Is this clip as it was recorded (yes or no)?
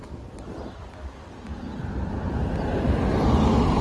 yes